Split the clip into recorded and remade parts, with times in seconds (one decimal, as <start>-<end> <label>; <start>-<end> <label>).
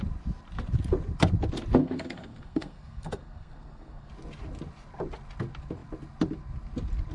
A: 0.0-1.8 recorded; 1.8-4.1 remade; 4.1-7.1 recorded